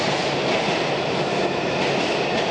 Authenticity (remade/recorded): recorded